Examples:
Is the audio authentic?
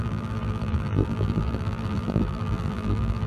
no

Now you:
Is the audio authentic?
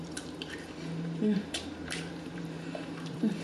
no